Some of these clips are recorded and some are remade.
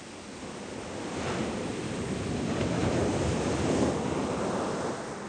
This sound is recorded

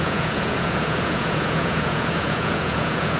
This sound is remade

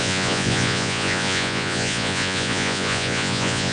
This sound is remade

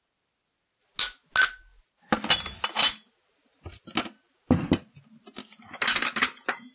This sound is recorded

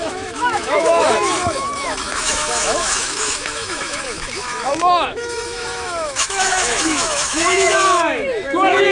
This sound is remade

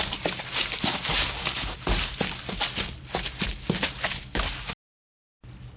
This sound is recorded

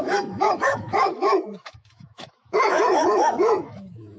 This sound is remade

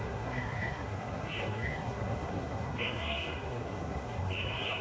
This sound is remade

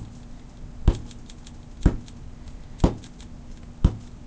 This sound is recorded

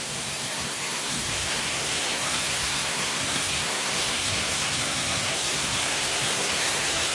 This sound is remade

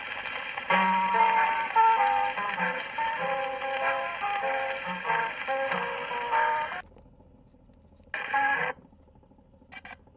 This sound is recorded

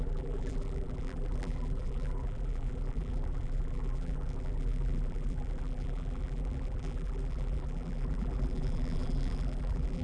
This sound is remade